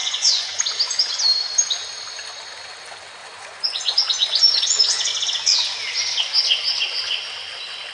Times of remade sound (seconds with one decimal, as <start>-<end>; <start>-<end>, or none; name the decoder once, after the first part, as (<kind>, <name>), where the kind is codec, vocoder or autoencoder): 0.0-0.6 (vocoder, Vocos); 3.2-5.1